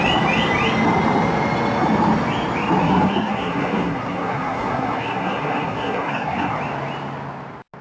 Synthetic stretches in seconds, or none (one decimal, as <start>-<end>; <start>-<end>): 2.8-6.6